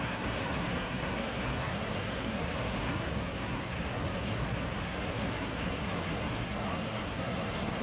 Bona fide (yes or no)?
no